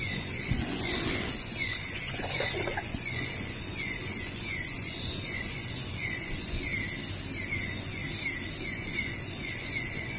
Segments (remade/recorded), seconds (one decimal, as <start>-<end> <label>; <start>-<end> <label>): 0.0-6.7 remade; 6.7-7.5 recorded; 7.5-8.0 remade; 8.0-8.6 recorded; 8.6-10.2 remade